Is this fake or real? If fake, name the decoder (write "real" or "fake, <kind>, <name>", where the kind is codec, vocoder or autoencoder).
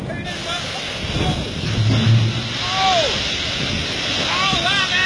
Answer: real